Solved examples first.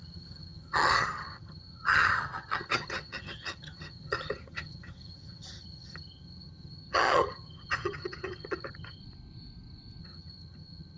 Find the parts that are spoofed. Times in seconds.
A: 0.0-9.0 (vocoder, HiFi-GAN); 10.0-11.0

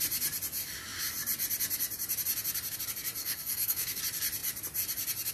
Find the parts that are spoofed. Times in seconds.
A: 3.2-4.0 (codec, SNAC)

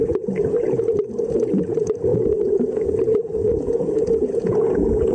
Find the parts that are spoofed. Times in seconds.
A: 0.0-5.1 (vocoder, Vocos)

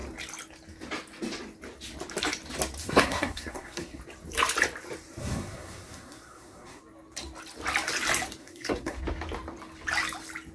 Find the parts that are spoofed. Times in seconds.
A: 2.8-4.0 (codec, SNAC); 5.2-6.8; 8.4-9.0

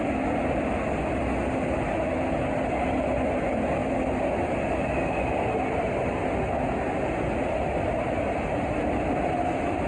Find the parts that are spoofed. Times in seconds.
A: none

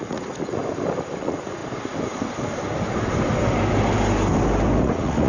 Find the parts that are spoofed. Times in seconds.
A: 0.0-0.6 (vocoder, Vocos); 1.2-1.6; 4.8-5.3

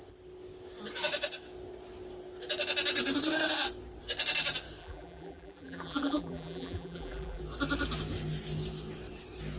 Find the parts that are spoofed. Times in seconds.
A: 4.8-7.4 (vocoder, BigVGAN v2)

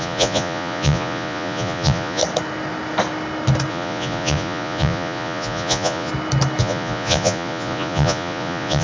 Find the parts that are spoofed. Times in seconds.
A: 0.0-2.2 (vocoder, Vocos); 3.7-6.1; 6.6-8.8